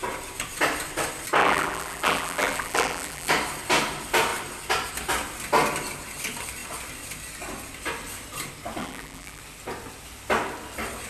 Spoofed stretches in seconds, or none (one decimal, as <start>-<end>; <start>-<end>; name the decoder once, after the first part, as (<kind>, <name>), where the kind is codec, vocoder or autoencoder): 1.4-3.3 (vocoder, BigVGAN v2); 8.8-9.4